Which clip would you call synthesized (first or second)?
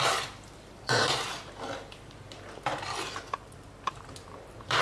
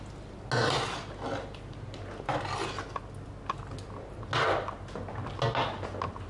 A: first